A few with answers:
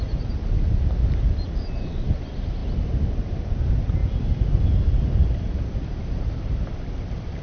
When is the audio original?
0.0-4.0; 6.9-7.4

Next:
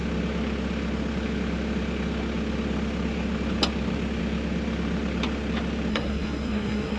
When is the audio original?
0.0-5.9